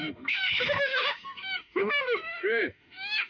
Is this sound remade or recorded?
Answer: remade